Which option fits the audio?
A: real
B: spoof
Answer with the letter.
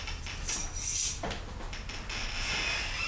A